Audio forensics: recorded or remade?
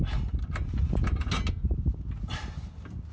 recorded